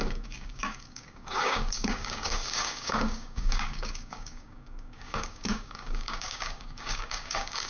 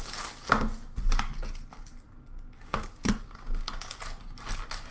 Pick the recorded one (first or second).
second